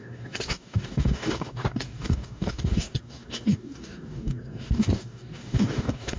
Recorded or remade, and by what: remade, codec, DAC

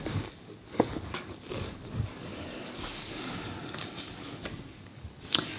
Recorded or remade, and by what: remade, codec, DAC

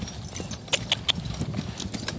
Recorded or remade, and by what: recorded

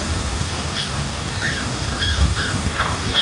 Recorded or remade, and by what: remade, codec, DAC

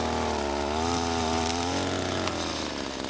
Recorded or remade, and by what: recorded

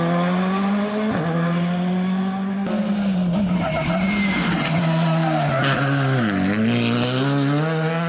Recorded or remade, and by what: recorded